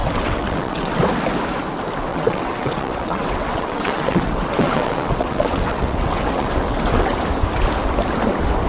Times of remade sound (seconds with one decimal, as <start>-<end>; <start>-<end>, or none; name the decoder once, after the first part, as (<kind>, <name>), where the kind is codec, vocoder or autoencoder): 0.0-0.9 (vocoder, WaveNeXt); 2.1-7.2